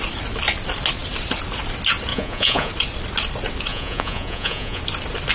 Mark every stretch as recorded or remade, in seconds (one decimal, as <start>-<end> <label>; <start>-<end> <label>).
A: 0.0-2.1 recorded; 2.1-2.7 remade; 2.7-3.7 recorded; 3.7-4.8 remade; 4.8-5.3 recorded

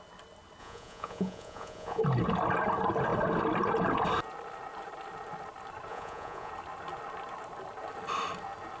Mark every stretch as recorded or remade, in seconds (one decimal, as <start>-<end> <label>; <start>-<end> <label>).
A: 0.0-0.6 recorded; 0.6-2.0 remade; 2.0-5.9 recorded; 5.9-6.5 remade; 6.5-8.8 recorded